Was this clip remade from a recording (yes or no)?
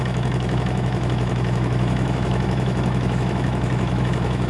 yes